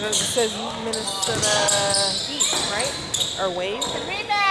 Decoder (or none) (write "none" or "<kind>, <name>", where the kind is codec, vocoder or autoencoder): none